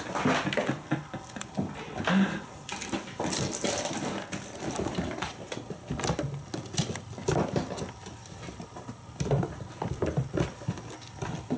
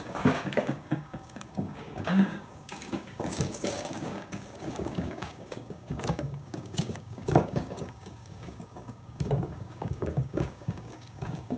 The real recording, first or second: first